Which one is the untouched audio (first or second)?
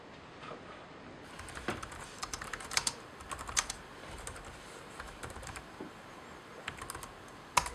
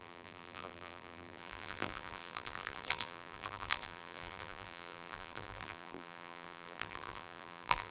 first